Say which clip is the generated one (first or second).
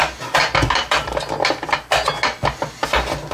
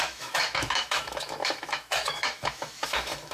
second